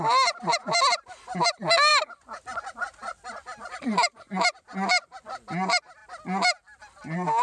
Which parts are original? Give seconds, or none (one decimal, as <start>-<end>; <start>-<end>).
0.0-7.4